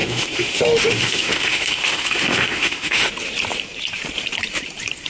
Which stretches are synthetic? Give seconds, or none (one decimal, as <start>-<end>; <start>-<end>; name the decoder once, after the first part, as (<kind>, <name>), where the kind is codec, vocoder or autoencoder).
0.0-3.1 (autoencoder, DAC-VAE)